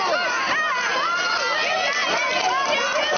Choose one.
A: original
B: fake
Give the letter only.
A